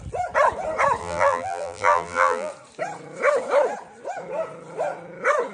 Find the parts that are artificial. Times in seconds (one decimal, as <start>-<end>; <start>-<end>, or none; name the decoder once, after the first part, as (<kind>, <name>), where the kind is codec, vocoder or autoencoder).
1.0-2.5 (vocoder, BigVGAN v2)